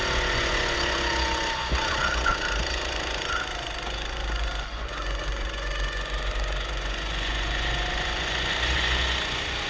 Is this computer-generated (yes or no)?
yes